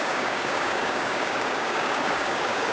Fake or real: fake